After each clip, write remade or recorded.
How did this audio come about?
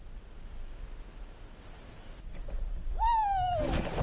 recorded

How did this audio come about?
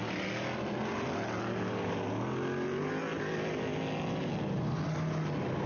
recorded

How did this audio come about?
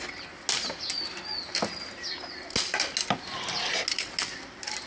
recorded